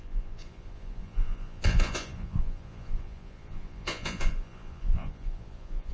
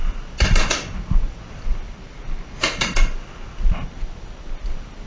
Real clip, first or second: second